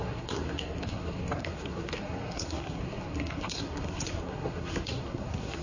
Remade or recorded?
remade